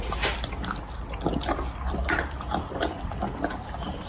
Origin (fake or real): real